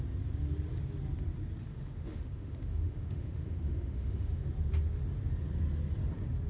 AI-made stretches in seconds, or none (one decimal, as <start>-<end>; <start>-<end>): 1.7-4.5